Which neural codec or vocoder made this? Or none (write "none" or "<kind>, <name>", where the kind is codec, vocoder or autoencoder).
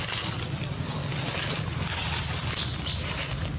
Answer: none